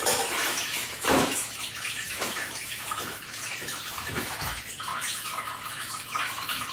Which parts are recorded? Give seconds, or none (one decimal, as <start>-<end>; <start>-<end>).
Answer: none